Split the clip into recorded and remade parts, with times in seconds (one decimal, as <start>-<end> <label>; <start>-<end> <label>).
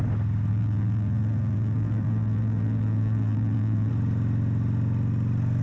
0.0-0.5 recorded; 0.5-3.9 remade; 3.9-5.6 recorded